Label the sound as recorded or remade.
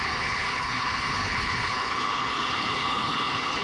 remade